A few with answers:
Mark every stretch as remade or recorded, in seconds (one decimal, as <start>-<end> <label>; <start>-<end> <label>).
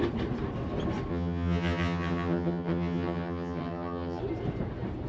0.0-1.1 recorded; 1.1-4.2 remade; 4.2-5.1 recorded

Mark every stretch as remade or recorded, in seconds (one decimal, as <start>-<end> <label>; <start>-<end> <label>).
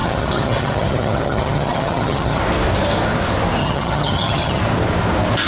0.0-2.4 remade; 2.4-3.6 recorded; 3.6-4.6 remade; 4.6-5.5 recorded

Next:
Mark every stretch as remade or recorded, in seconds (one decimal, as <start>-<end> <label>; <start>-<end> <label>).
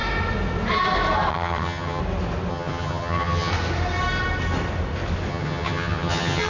0.0-1.3 recorded; 1.3-2.0 remade; 2.0-2.5 recorded; 2.5-3.5 remade; 3.5-5.3 recorded; 5.3-6.5 remade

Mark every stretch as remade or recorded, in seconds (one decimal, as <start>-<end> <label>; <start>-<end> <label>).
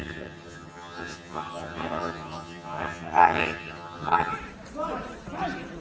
0.0-4.3 remade; 4.3-5.8 recorded